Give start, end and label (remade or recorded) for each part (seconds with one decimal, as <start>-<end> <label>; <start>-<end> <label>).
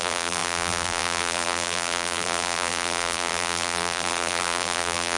0.0-5.2 remade